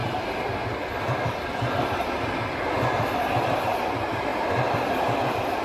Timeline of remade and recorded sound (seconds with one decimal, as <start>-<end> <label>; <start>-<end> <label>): 0.0-5.6 recorded